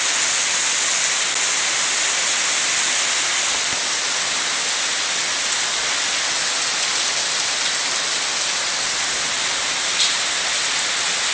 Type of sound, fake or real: real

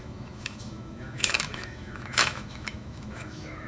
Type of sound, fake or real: fake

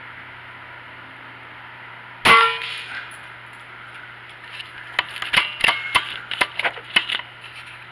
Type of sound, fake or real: real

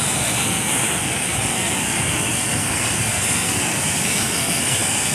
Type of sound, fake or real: fake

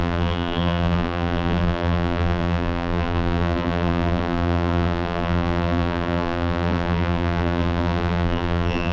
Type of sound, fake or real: fake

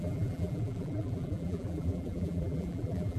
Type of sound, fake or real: fake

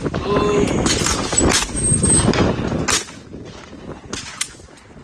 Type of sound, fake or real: real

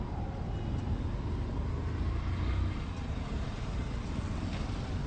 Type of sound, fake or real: real